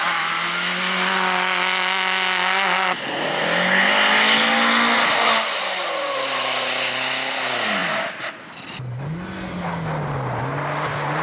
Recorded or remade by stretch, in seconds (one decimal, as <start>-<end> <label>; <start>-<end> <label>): 0.0-11.2 recorded